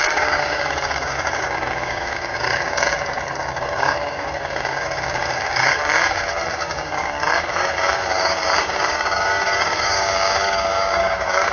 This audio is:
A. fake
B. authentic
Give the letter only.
A